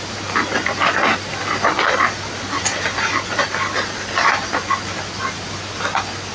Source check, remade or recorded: recorded